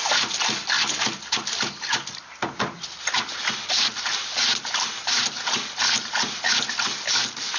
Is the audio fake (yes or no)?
no